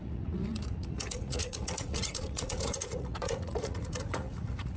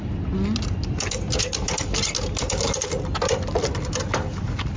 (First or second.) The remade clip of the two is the first